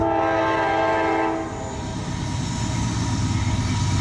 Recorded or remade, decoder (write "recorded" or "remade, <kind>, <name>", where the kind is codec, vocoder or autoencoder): recorded